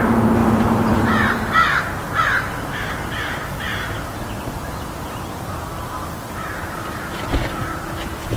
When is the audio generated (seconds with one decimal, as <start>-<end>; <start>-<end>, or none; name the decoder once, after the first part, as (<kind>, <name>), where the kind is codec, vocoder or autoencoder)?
none

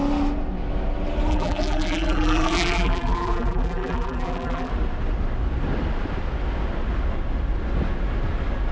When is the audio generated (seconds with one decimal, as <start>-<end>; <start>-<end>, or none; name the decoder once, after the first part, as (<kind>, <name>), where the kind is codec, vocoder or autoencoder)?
1.3-4.7 (vocoder, BigVGAN v2)

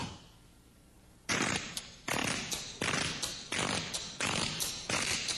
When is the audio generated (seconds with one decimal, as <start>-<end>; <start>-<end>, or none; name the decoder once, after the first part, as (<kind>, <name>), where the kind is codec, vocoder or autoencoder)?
0.0-2.2 (vocoder, BigVGAN v2); 4.1-5.4

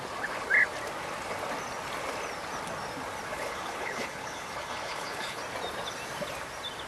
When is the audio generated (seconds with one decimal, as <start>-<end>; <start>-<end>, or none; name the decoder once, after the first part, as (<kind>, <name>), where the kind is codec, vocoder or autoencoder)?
3.3-5.4 (codec, HILCodec)

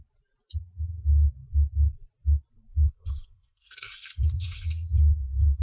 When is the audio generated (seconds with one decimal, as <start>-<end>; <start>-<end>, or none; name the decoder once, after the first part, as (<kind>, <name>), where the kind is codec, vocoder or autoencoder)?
2.7-5.6 (codec, SNAC)

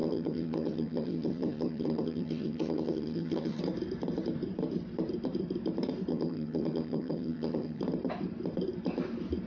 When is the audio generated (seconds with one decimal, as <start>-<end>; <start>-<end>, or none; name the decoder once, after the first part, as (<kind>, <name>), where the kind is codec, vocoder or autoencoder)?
0.0-3.6 (vocoder, HiFi-GAN); 6.1-7.8

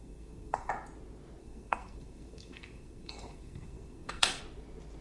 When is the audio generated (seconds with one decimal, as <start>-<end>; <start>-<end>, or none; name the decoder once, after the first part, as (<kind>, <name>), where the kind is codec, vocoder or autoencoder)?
0.0-0.7 (codec, SNAC); 1.4-4.4